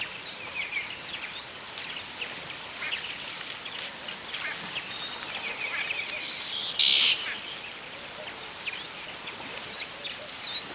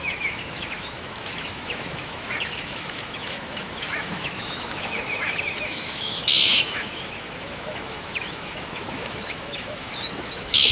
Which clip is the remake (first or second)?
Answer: second